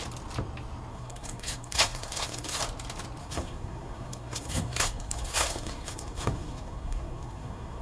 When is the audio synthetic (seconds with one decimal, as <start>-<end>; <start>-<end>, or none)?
0.9-2.6; 3.2-7.8